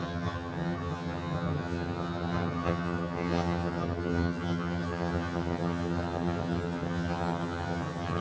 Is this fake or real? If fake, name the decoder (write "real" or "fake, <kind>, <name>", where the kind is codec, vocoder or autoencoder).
fake, vocoder, HiFi-GAN